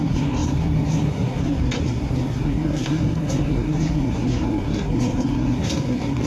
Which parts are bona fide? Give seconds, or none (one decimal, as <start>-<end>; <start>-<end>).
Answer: none